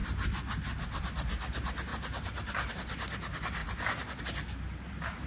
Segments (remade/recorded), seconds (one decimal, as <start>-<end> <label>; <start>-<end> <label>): 0.0-1.9 recorded; 1.9-2.7 remade; 2.7-5.3 recorded